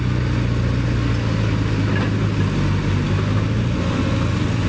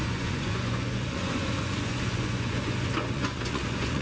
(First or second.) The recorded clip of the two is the first